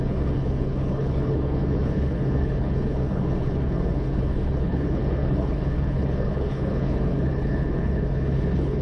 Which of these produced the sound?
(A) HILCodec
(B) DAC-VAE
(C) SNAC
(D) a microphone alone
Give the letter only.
A